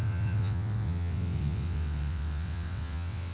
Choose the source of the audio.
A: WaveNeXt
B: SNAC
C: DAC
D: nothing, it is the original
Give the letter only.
A